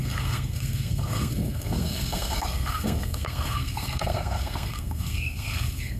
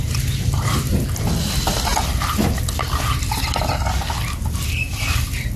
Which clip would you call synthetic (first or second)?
first